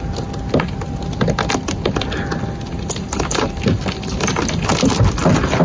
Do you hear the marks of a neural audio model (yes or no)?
no